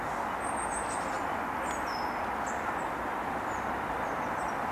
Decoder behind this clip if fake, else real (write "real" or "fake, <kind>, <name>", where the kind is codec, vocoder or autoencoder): real